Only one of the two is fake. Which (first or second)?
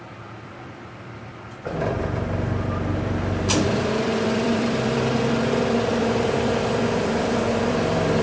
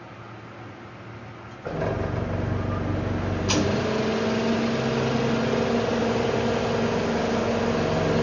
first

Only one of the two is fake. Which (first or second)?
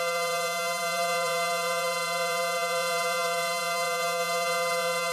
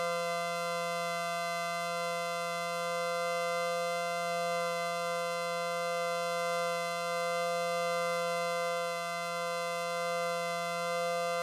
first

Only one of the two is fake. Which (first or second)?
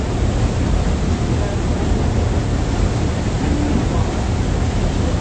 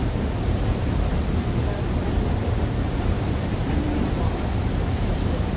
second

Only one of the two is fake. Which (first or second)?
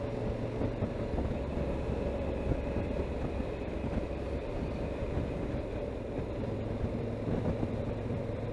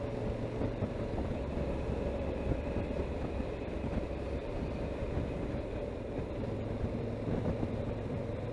second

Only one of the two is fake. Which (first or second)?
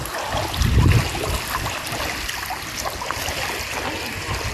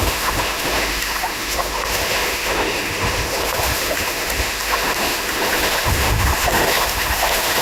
second